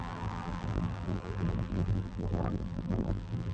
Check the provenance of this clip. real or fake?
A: fake